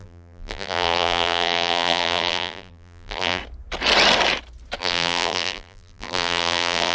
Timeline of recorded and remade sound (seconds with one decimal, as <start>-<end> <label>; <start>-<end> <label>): 0.0-3.4 remade; 3.4-4.8 recorded; 4.8-6.9 remade